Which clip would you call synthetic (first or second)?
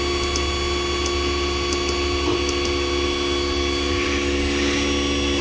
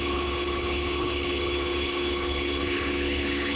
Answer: second